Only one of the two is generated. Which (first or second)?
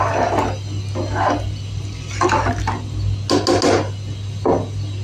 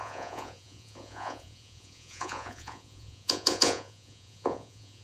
second